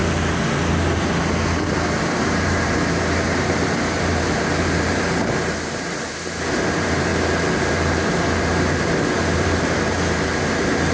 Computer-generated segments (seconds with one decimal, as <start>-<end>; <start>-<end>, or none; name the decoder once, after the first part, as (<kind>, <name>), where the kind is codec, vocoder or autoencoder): 2.0-7.1 (vocoder, BigVGAN v2); 7.7-10.9